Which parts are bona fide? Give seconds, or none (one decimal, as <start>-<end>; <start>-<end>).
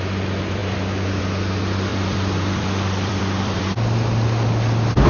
0.0-1.9; 3.6-5.1